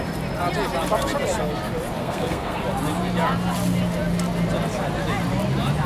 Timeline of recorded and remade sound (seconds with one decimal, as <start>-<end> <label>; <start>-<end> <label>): 0.0-2.0 recorded; 2.0-2.6 remade; 2.6-5.9 recorded